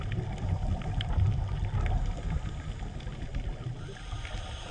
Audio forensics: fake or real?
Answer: real